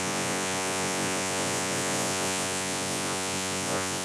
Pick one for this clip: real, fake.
fake